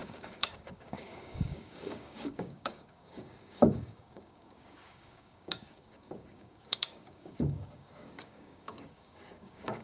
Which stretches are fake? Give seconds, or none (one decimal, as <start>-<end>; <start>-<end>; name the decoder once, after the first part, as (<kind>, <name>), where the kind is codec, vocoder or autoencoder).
0.0-9.8 (codec, DAC)

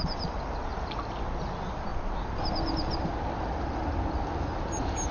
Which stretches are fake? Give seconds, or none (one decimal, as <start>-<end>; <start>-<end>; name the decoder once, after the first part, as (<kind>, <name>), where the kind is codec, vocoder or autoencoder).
1.9-3.1 (vocoder, BigVGAN v2)

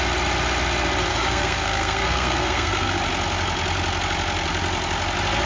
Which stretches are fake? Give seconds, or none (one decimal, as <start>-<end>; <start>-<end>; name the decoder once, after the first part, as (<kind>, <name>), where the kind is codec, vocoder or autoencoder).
1.1-3.0 (codec, SNAC)

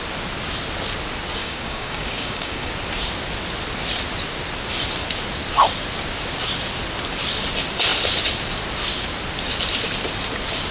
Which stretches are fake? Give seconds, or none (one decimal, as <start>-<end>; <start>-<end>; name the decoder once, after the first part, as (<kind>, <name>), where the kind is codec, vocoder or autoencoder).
1.4-2.7 (codec, DAC)

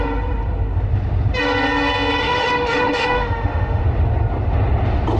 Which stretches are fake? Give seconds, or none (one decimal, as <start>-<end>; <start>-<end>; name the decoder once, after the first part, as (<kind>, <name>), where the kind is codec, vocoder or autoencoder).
2.2-3.8 (autoencoder, DAC-VAE)

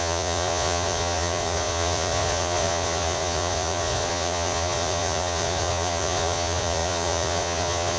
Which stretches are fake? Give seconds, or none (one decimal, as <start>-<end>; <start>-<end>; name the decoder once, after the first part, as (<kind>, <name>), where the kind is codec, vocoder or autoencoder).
0.0-8.0 (vocoder, Vocos)